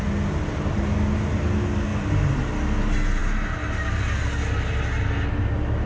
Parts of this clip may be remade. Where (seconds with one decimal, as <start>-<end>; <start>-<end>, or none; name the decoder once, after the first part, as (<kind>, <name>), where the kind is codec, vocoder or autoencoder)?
none